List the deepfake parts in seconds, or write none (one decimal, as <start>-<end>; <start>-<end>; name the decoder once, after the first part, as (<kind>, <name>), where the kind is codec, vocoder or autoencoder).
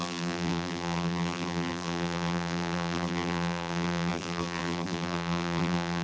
0.0-6.0 (vocoder, BigVGAN v2)